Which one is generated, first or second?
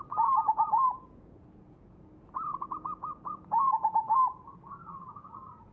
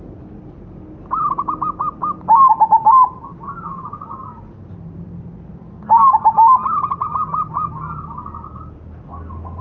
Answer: first